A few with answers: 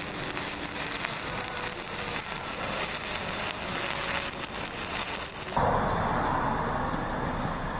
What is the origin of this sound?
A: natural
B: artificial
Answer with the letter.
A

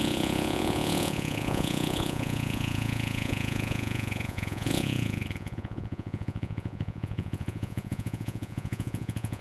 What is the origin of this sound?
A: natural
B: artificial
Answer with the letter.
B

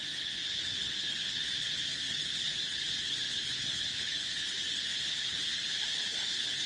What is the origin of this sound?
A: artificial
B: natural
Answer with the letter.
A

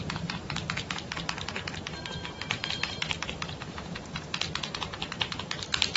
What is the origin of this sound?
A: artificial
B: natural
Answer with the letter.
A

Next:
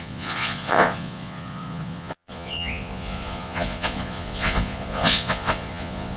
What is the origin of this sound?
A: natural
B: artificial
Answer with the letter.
B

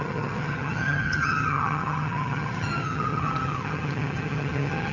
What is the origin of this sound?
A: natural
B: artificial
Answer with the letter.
B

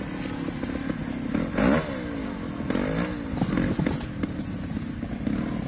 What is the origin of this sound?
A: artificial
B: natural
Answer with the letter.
B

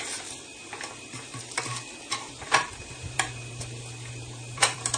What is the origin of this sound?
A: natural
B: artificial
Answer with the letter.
B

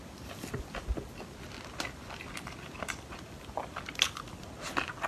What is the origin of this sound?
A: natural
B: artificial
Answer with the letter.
A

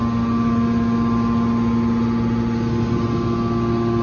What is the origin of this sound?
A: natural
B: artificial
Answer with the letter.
A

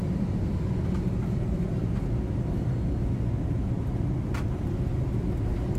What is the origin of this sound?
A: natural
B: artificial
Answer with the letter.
A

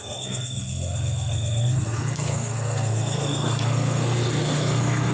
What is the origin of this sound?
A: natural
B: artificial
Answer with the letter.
B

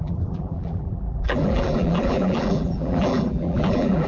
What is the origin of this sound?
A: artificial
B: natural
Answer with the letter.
A